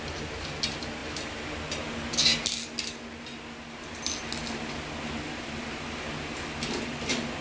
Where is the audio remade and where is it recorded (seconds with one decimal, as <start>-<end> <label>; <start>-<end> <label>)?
0.0-7.4 recorded